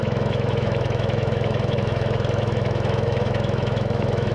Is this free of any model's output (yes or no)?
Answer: no